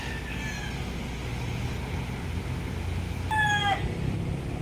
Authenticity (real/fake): real